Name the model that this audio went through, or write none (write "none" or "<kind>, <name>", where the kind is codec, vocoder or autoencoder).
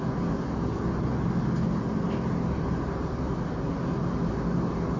none